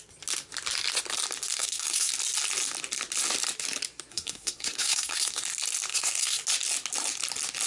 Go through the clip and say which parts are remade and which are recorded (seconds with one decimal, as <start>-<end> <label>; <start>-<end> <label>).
0.0-1.5 recorded; 1.5-2.1 remade; 2.1-4.1 recorded; 4.1-5.4 remade; 5.4-5.9 recorded; 5.9-6.4 remade; 6.4-7.7 recorded